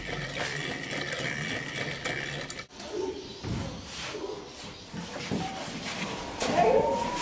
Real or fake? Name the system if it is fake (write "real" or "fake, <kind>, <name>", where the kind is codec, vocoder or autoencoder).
fake, vocoder, BigVGAN v2